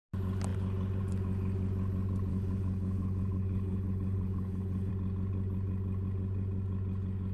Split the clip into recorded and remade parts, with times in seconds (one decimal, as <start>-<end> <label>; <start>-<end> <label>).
0.0-2.3 recorded; 2.3-4.9 remade; 4.9-7.3 recorded